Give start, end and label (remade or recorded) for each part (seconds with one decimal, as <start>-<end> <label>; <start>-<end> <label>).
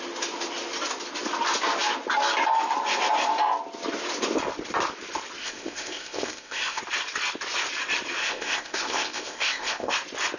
0.0-5.4 recorded; 5.4-6.8 remade; 6.8-8.2 recorded; 8.2-9.9 remade; 9.9-10.4 recorded